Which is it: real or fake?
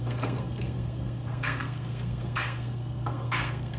fake